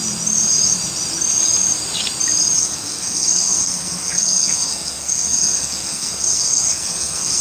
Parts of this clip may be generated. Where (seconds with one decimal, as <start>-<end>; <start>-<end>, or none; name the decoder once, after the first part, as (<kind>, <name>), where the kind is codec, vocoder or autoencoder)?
2.6-7.4 (codec, SNAC)

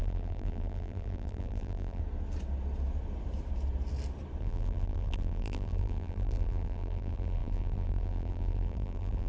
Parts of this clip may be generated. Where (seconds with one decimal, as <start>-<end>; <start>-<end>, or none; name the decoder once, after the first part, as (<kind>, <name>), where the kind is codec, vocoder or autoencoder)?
0.0-2.0 (vocoder, BigVGAN v2); 4.4-9.3

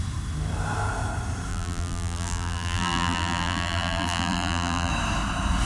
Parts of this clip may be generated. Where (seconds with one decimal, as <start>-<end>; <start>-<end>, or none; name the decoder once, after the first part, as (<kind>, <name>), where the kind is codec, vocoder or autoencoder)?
1.5-4.9 (vocoder, BigVGAN v2)

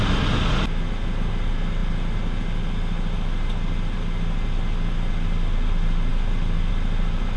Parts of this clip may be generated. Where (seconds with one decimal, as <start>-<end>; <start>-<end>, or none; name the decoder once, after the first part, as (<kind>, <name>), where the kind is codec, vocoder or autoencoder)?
none

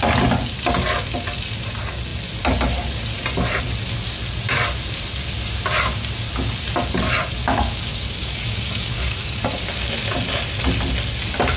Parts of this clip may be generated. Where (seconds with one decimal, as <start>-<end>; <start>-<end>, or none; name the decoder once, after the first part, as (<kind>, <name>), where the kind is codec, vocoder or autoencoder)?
7.4-9.4 (codec, DAC)